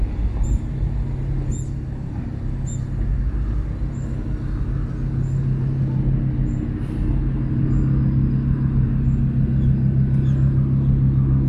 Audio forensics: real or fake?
real